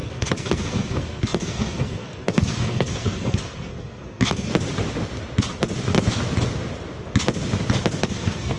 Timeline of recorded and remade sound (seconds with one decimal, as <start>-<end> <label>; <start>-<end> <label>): 0.0-4.5 remade; 4.5-8.0 recorded; 8.0-8.6 remade